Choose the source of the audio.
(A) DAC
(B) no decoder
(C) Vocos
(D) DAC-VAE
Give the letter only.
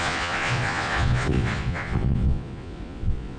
C